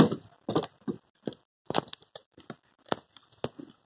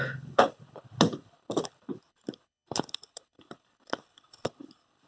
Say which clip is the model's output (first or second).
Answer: second